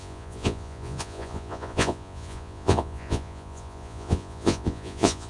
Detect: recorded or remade remade